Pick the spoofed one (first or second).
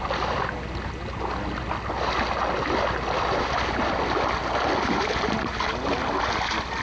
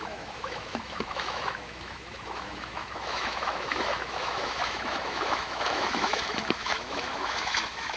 second